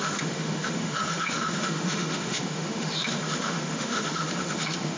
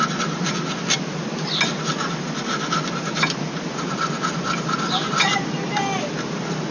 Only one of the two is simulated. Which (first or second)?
first